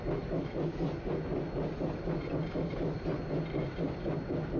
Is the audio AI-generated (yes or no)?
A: no